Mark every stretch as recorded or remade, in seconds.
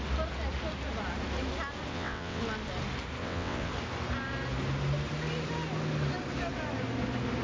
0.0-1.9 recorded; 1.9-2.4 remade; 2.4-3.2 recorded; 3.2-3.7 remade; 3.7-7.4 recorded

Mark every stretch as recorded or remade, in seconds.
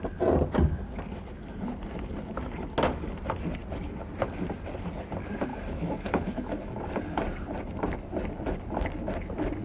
0.0-5.5 recorded; 5.5-6.7 remade; 6.7-9.6 recorded